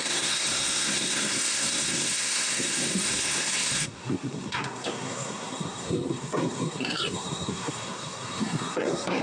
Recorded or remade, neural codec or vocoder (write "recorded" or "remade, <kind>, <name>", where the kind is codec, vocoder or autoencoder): remade, codec, SNAC